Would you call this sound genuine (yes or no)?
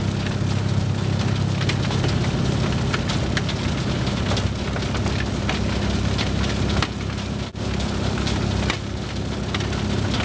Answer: yes